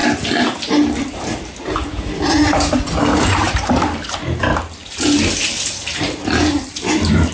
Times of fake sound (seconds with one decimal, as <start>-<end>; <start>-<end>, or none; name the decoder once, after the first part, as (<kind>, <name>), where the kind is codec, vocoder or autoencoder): 3.1-3.6 (vocoder, BigVGAN v2); 4.8-6.6